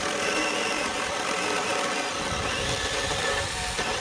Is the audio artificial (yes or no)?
no